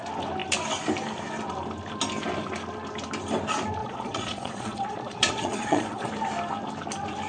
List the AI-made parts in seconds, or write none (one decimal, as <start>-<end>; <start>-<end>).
3.8-6.1